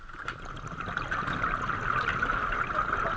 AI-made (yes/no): no